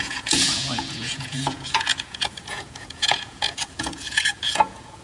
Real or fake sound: fake